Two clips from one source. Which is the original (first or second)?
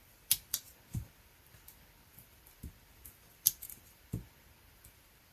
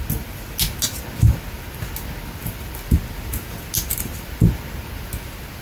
second